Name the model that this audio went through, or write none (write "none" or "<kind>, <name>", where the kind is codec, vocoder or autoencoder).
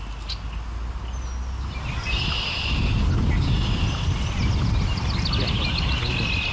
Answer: none